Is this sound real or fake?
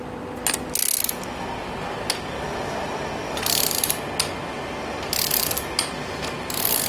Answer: real